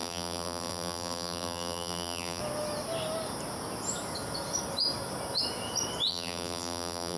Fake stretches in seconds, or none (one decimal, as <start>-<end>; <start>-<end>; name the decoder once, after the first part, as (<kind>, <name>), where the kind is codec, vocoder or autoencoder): 0.0-2.4 (vocoder, BigVGAN v2); 6.1-7.2